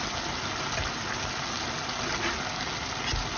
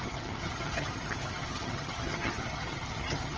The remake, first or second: second